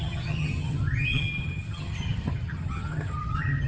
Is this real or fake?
fake